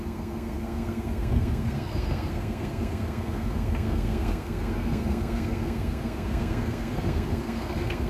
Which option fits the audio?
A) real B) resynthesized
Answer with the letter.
B